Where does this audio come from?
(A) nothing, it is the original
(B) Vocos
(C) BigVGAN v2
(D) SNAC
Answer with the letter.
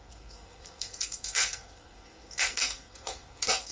D